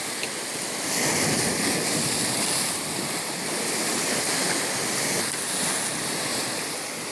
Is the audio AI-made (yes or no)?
no